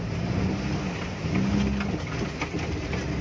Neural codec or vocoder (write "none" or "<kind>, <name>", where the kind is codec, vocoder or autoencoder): none